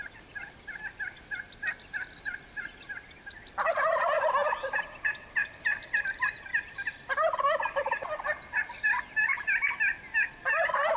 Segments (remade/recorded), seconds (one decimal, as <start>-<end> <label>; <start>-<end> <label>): 0.0-11.0 recorded